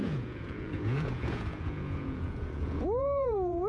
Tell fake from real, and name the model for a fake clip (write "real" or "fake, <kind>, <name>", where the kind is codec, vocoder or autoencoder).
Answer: fake, vocoder, Vocos